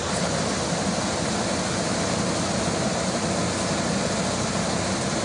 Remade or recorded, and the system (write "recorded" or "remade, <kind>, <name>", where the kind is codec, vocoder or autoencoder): recorded